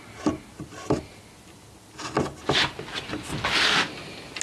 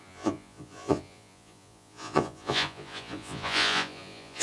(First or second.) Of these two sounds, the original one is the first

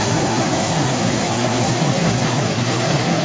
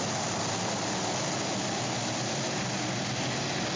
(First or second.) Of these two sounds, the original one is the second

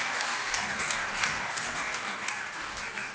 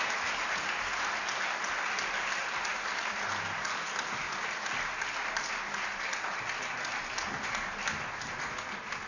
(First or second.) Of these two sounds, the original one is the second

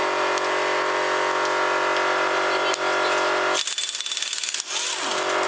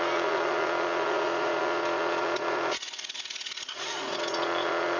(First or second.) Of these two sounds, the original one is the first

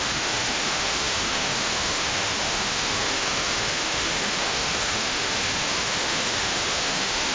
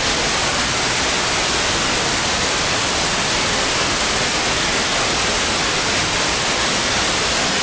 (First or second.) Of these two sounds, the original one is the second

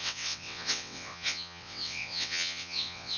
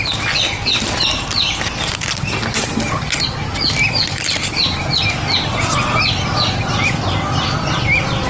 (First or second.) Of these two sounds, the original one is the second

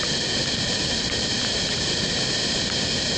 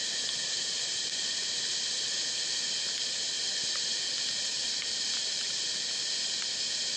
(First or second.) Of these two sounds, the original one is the first